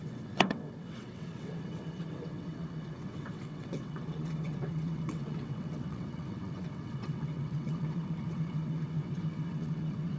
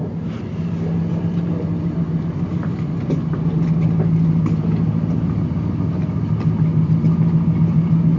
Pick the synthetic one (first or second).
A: first